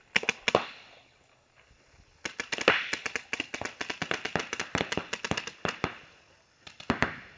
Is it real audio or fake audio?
real